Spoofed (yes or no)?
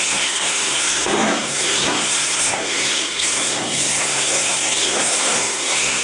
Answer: yes